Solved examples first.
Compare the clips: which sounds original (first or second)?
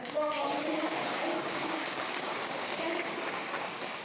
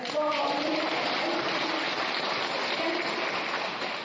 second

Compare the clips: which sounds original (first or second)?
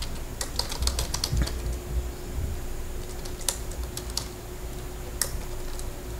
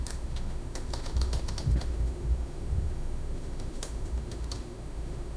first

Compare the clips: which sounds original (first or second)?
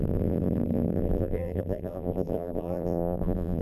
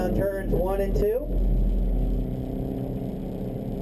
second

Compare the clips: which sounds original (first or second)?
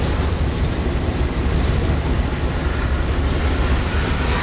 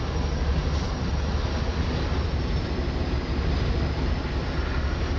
second